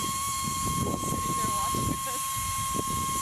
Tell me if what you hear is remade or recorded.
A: recorded